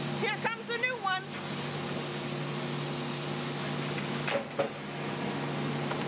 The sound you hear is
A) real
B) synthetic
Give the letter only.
A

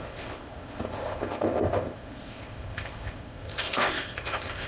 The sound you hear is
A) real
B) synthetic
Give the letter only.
B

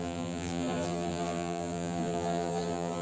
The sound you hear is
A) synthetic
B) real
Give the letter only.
A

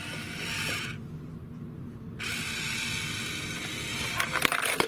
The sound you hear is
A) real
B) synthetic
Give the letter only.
A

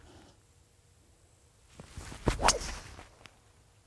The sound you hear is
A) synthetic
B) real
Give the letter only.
B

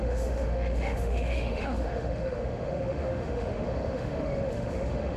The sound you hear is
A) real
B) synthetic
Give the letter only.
B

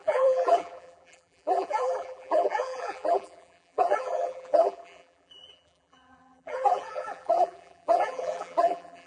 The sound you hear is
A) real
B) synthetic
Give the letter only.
B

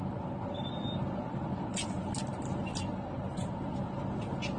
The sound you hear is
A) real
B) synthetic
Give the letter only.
A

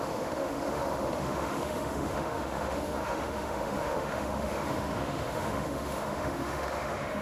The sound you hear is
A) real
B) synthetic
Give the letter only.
B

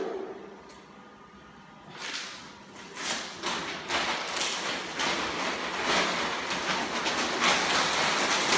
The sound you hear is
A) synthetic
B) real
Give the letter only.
B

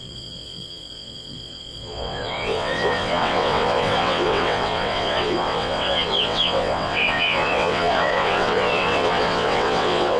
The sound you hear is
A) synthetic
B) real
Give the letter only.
A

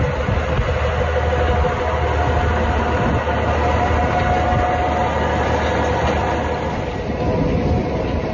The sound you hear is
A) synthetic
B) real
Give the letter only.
B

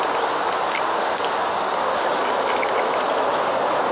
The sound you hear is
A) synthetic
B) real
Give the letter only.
B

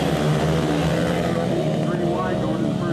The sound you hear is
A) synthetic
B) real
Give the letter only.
B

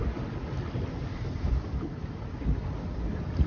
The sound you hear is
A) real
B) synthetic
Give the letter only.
A